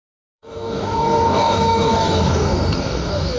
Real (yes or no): no